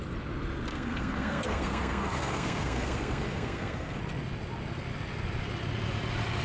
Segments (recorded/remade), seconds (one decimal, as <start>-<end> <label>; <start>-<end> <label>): 0.0-0.7 recorded; 0.7-4.0 remade; 4.0-6.4 recorded